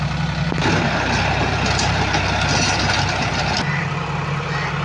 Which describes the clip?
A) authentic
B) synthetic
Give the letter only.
A